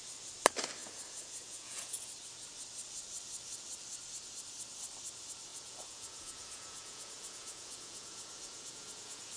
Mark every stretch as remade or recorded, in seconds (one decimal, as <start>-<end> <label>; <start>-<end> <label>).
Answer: 0.0-0.8 recorded; 0.8-2.1 remade; 2.1-5.5 recorded; 5.5-9.4 remade